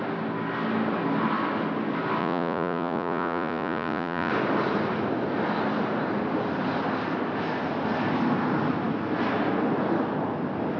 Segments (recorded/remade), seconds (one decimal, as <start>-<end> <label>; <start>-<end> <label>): 0.0-2.2 recorded; 2.2-4.3 remade; 4.3-10.8 recorded

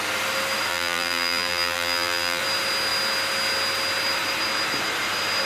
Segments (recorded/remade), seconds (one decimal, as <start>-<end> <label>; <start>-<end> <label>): 0.0-0.7 recorded; 0.7-2.4 remade; 2.4-5.5 recorded

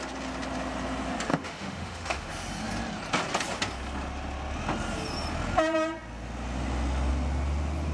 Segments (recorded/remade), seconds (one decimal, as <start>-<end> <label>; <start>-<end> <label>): 0.0-1.3 recorded; 1.3-2.3 remade; 2.3-7.9 recorded

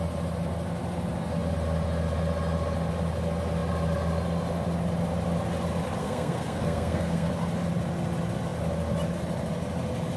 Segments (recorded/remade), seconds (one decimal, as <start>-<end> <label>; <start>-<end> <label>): 0.0-6.0 recorded; 6.0-7.3 remade; 7.3-10.2 recorded

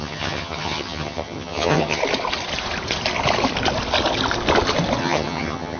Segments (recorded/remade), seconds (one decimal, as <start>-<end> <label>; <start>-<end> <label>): 0.0-2.0 remade; 2.0-5.0 recorded; 5.0-5.8 remade